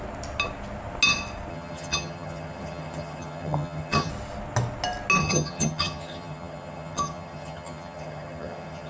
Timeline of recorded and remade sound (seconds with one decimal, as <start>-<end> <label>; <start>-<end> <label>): 0.0-1.5 recorded; 1.5-4.1 remade; 4.1-5.2 recorded; 5.2-8.9 remade

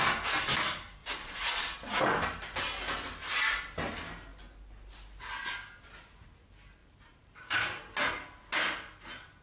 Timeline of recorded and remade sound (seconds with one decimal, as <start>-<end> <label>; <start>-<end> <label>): 0.0-1.0 recorded; 1.0-2.0 remade; 2.0-6.8 recorded; 6.8-7.8 remade; 7.8-9.4 recorded

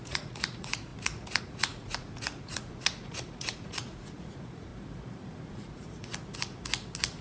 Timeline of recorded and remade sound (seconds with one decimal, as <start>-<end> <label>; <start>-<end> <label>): 0.0-4.7 remade; 4.7-5.5 recorded; 5.5-6.1 remade; 6.1-7.2 recorded

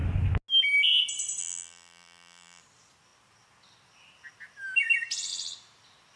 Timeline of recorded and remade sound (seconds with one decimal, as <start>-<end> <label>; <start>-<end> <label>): 0.0-1.4 recorded; 1.4-2.6 remade; 2.6-6.2 recorded

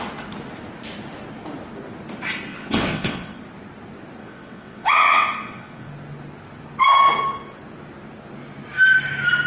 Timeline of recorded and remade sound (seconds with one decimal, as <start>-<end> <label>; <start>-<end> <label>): 0.0-2.5 recorded; 2.5-3.4 remade; 3.4-4.2 recorded; 4.2-5.9 remade; 5.9-9.5 recorded

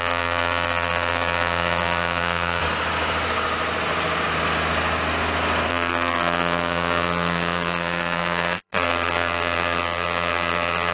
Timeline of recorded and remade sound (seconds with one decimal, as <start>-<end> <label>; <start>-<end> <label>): 0.0-2.6 remade; 2.6-5.7 recorded; 5.7-10.9 remade

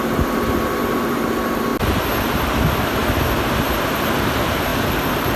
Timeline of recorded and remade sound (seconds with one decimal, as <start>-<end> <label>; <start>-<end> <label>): 0.0-1.7 remade; 1.7-2.2 recorded; 2.2-3.0 remade; 3.0-3.9 recorded; 3.9-5.4 remade